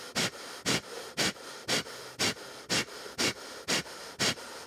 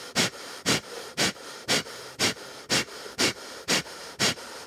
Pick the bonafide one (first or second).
first